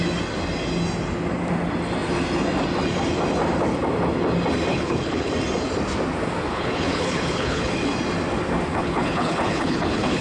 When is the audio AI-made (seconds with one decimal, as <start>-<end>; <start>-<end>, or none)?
4.7-5.3; 6.5-7.7; 8.7-10.2